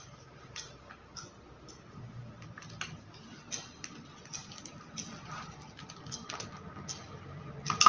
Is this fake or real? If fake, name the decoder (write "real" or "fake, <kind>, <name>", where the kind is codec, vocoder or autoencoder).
real